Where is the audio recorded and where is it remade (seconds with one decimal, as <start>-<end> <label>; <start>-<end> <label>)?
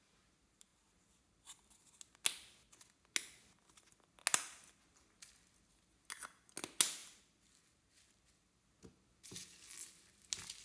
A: 0.0-10.6 recorded